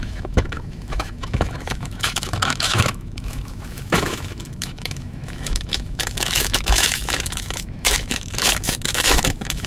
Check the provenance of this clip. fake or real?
fake